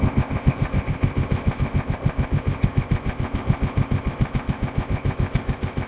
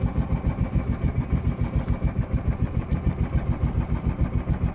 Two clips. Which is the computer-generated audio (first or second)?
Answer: first